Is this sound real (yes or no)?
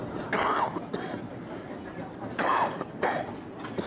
yes